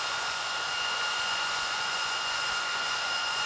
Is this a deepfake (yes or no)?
yes